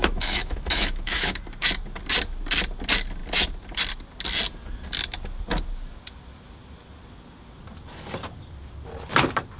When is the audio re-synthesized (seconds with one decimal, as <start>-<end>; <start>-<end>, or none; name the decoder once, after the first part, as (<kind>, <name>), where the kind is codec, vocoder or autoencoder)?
0.0-1.4 (autoencoder, DAC-VAE)